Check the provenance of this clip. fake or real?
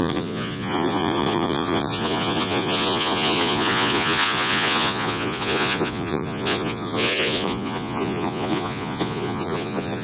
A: fake